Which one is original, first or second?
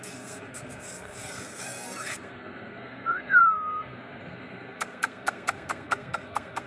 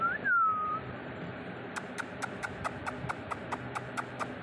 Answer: second